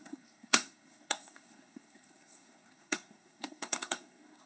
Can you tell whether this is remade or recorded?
remade